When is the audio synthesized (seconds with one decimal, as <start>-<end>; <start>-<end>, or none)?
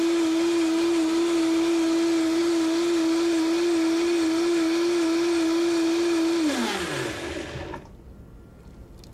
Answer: none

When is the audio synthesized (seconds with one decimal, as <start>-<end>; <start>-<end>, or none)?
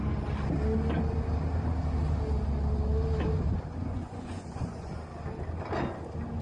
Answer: 3.8-4.9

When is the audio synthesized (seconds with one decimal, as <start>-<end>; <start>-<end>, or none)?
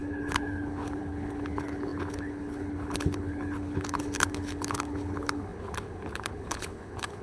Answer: 0.0-7.2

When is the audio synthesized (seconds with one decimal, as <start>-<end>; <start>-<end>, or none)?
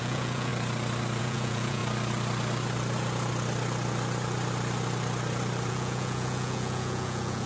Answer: 0.0-0.5; 1.2-1.8; 5.7-7.5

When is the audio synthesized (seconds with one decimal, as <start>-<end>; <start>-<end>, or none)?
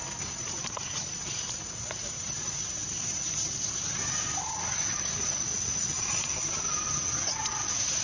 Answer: 0.6-8.0